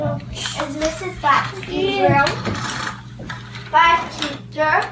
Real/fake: real